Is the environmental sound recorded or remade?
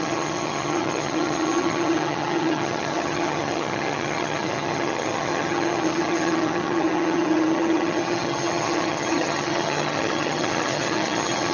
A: remade